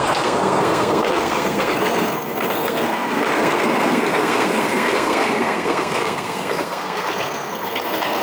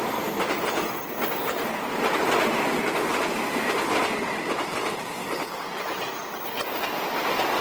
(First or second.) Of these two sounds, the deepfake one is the first